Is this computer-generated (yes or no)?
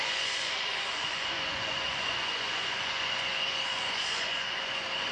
yes